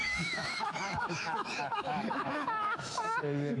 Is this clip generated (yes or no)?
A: yes